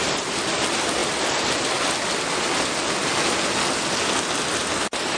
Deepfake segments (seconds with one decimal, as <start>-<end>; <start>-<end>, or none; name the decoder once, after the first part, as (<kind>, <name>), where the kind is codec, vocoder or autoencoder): none